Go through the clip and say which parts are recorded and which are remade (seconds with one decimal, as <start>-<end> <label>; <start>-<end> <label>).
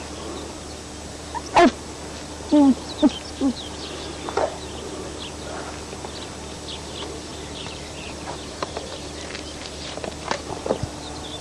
0.0-7.3 recorded; 7.3-10.9 remade; 10.9-11.4 recorded